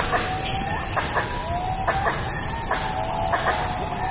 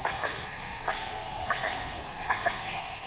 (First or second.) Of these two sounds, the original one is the first